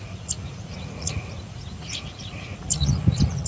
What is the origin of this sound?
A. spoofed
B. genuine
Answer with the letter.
A